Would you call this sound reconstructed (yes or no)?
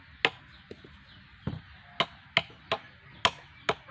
no